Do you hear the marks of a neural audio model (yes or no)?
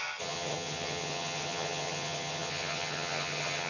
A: yes